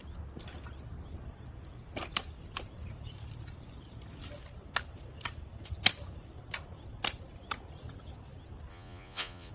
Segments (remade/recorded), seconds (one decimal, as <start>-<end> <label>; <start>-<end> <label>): 0.0-8.7 recorded; 8.7-9.5 remade